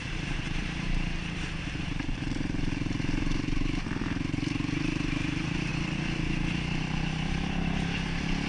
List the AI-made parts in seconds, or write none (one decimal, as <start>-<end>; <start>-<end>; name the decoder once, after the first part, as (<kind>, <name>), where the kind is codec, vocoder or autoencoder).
0.0-5.7 (vocoder, BigVGAN v2)